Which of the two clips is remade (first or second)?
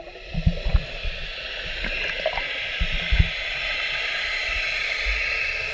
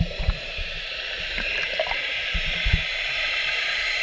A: second